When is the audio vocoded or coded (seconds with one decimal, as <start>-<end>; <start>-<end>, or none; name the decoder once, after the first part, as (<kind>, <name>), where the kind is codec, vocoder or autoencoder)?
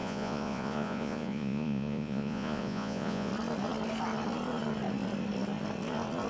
0.0-3.3 (vocoder, Vocos)